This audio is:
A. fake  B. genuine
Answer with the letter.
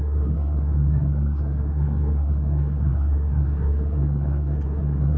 A